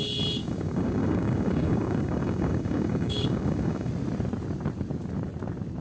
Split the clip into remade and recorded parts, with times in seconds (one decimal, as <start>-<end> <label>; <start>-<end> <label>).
0.0-0.4 recorded; 0.4-3.9 remade; 3.9-5.8 recorded